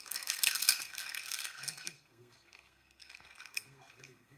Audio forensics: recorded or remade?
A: remade